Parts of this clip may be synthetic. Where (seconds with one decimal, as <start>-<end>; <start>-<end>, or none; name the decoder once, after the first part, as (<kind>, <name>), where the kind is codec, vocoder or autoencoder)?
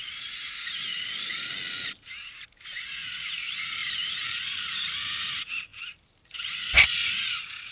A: 0.0-1.5 (vocoder, Vocos); 2.7-5.7; 6.2-7.7